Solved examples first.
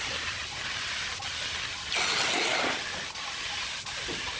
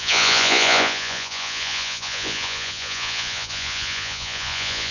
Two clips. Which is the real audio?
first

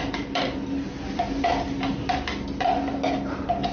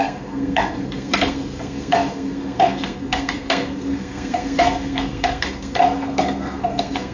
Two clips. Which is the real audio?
first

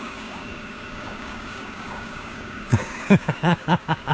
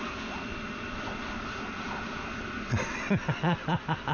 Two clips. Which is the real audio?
second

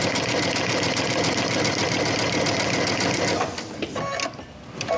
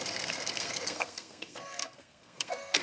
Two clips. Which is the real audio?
first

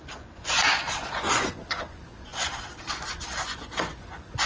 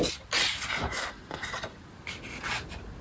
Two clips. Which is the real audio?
second